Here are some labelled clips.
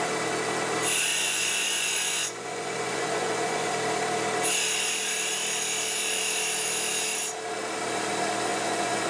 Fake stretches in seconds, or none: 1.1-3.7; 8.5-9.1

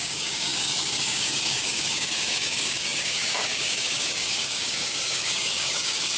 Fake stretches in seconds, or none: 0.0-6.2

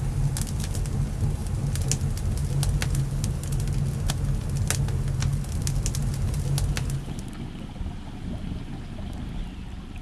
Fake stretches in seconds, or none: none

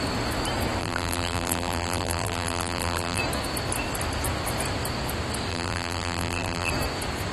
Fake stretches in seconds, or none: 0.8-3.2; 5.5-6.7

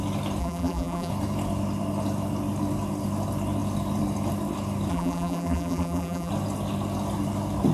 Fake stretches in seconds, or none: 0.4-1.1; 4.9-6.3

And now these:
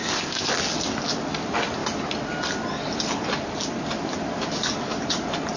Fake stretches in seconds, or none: 0.0-0.5

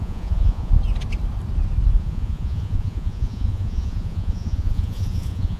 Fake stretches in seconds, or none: 0.0-0.7; 2.0-5.6

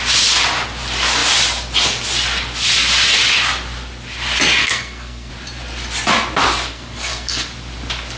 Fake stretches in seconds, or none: 4.6-5.3; 6.7-7.5